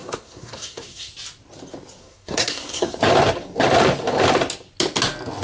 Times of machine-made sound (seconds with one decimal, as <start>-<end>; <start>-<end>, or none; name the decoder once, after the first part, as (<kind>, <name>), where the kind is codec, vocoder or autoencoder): 0.0-1.1 (codec, SNAC); 2.0-3.0